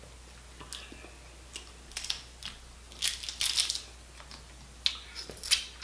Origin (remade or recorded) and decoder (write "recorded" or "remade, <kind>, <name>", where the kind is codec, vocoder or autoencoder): recorded